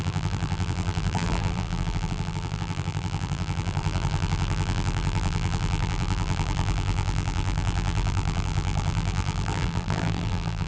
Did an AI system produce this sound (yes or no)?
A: yes